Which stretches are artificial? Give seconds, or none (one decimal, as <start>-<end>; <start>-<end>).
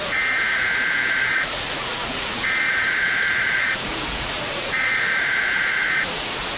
0.0-6.6